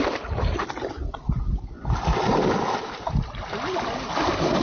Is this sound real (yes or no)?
yes